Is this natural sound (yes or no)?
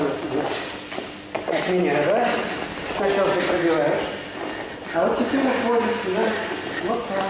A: yes